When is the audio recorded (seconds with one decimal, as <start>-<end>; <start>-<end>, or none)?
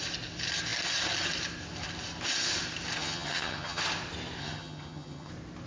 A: 0.0-3.0; 3.8-4.4; 5.3-5.7